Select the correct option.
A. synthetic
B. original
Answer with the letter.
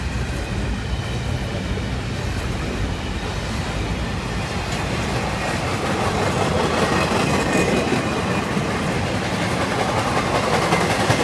B